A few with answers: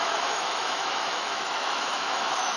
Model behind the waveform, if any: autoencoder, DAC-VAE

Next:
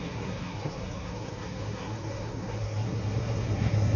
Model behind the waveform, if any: codec, SNAC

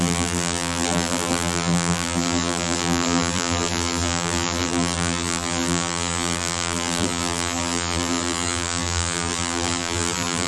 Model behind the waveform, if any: vocoder, BigVGAN v2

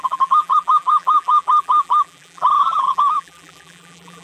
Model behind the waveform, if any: vocoder, BigVGAN v2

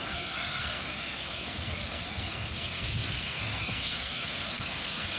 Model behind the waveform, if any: codec, SNAC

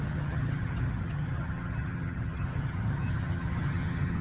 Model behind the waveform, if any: vocoder, HiFi-GAN